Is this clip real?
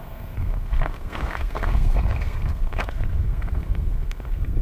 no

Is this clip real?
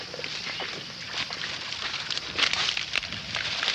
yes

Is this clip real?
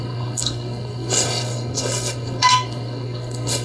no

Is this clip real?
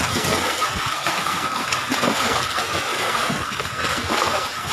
no